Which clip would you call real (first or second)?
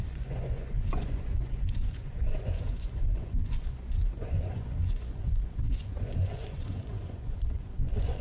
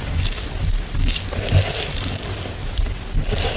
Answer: second